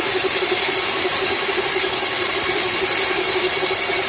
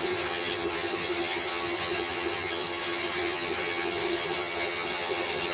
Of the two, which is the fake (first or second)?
second